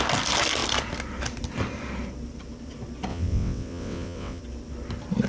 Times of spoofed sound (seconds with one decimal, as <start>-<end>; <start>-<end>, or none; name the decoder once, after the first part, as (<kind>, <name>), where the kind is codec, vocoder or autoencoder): 3.1-4.4 (vocoder, WaveNeXt)